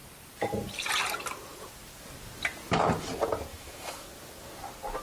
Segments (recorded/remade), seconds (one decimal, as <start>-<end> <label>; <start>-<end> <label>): 0.0-3.5 recorded; 3.5-4.1 remade; 4.1-5.0 recorded